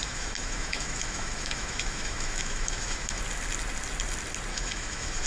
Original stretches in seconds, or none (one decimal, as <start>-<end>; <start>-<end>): 3.2-4.5